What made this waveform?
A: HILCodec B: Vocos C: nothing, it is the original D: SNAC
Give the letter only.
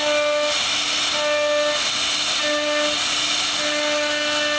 C